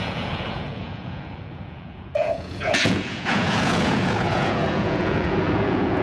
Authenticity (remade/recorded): remade